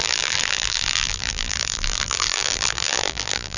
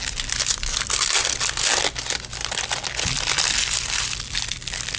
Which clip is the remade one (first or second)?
first